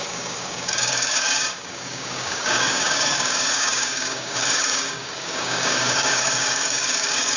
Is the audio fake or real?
fake